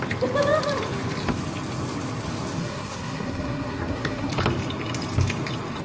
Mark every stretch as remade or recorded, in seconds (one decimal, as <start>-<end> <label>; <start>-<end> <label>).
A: 0.0-2.6 recorded; 2.6-4.3 remade; 4.3-5.8 recorded